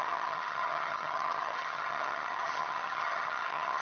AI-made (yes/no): yes